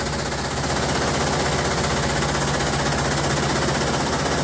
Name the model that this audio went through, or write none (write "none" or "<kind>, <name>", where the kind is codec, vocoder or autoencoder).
none